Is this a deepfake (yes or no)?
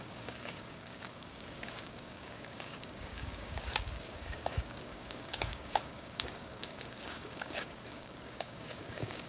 yes